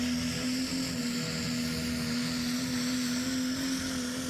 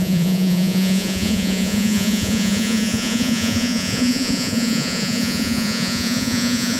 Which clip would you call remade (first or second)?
second